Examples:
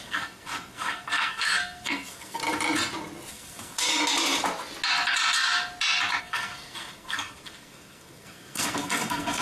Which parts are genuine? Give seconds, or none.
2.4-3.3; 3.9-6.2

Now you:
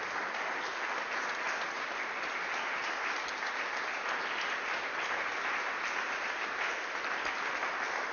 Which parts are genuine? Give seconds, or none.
0.0-8.1

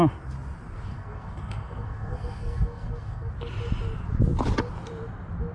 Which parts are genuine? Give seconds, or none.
0.0-0.9; 3.3-5.5

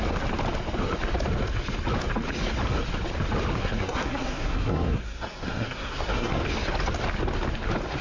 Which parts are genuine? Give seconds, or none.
0.0-3.5; 6.4-8.0

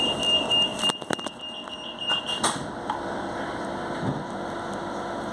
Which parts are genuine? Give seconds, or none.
0.0-5.3

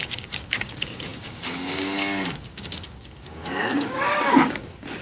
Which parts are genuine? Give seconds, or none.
none

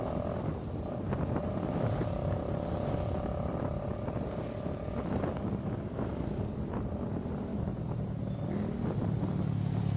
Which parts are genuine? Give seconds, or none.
0.0-10.0